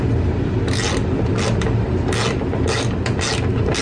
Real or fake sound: real